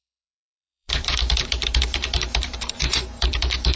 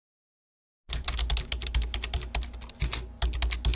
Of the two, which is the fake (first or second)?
first